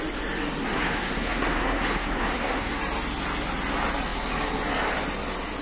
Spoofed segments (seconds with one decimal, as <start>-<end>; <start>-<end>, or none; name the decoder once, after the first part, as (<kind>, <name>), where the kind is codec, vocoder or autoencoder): 0.6-2.8 (codec, SNAC)